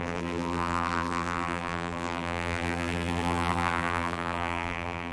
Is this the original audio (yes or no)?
no